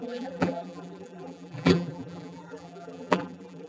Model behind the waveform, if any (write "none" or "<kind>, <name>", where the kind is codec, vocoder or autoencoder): vocoder, BigVGAN v2